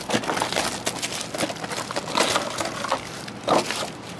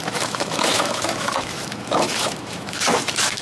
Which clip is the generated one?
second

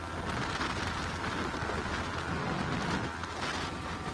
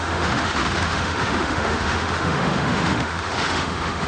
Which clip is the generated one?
second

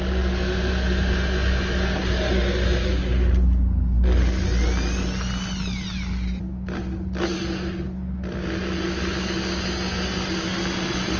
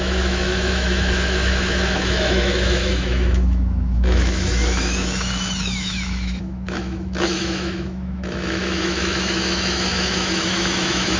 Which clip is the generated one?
second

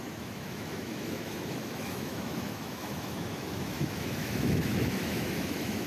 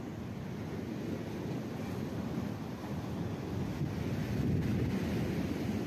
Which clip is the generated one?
first